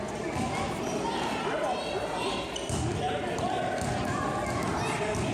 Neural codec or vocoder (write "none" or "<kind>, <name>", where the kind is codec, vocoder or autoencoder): none